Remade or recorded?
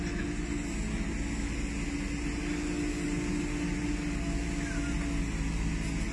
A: recorded